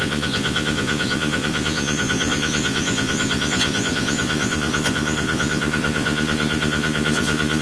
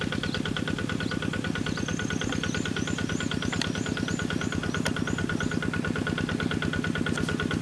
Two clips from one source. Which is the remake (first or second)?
first